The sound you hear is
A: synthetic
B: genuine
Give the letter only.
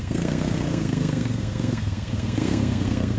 A